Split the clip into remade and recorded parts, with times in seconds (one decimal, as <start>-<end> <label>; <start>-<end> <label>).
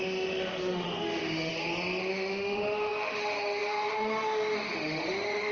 0.0-1.5 remade; 1.5-2.1 recorded; 2.1-5.5 remade